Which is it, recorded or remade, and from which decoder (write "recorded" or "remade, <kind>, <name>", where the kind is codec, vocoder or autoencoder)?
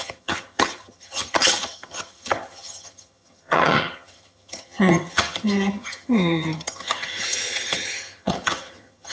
remade, vocoder, HiFi-GAN